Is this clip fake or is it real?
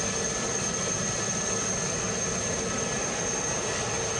real